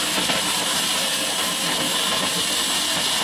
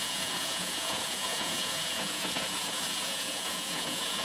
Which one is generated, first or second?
second